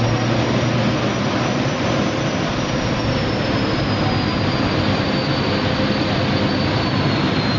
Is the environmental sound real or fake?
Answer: real